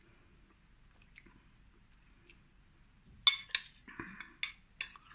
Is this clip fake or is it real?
real